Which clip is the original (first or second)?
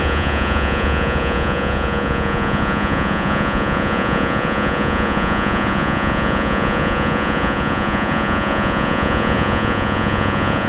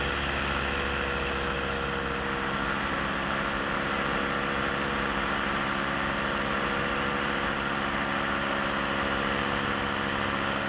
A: second